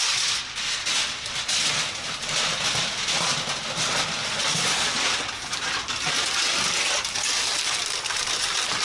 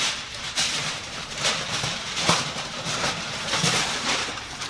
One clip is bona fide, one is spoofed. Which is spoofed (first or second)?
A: second